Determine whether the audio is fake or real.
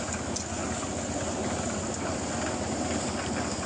real